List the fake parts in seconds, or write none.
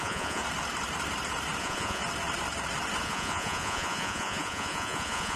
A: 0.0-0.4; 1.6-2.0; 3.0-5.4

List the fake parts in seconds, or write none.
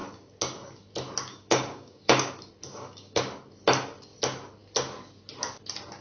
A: 1.3-2.3; 2.7-3.2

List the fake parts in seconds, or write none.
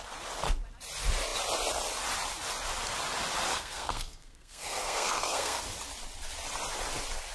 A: 3.5-5.6